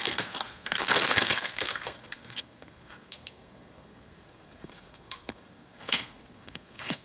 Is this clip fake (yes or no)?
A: yes